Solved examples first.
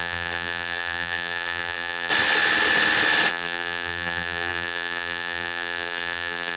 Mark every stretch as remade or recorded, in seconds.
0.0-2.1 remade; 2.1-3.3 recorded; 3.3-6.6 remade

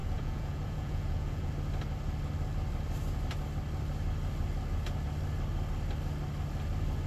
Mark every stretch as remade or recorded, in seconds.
0.0-1.5 remade; 1.5-7.1 recorded

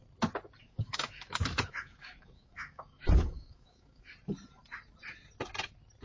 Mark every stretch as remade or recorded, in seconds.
0.0-0.6 recorded; 0.6-4.1 remade; 4.1-6.0 recorded

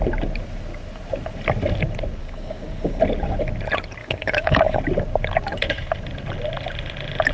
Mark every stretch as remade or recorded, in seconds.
0.0-2.2 recorded; 2.2-3.0 remade; 3.0-4.0 recorded; 4.0-4.8 remade; 4.8-7.3 recorded

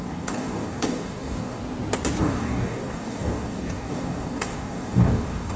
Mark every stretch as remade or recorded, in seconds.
0.0-1.6 remade; 1.6-2.2 recorded; 2.2-5.6 remade

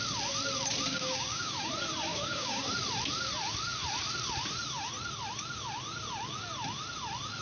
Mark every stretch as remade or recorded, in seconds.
0.0-0.9 recorded; 0.9-1.7 remade; 1.7-2.1 recorded; 2.1-2.7 remade; 2.7-7.4 recorded